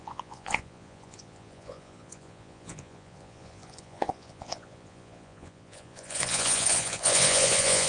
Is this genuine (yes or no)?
no